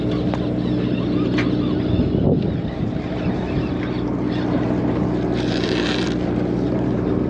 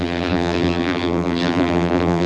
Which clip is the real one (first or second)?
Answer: first